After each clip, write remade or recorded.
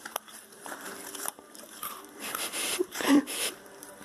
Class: remade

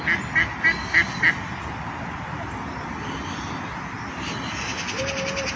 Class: recorded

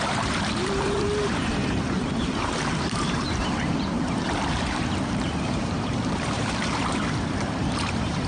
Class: remade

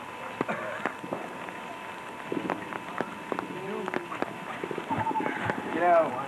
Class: recorded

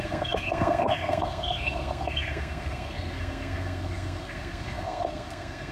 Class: remade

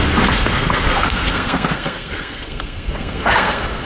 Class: remade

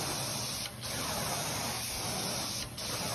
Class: recorded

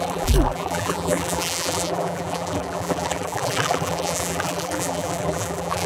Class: remade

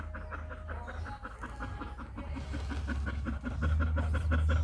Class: recorded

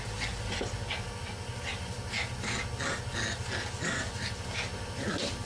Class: recorded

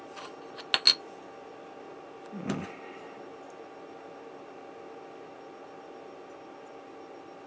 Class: recorded